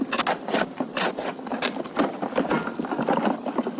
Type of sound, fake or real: real